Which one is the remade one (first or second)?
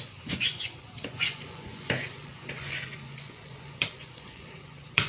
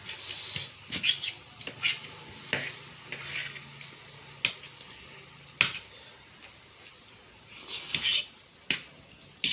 first